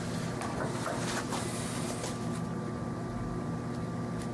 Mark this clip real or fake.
real